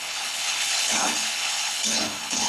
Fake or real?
fake